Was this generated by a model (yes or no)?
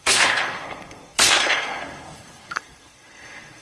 yes